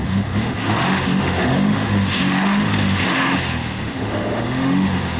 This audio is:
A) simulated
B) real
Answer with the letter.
A